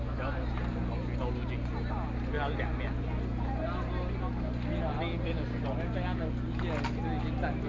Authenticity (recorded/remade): recorded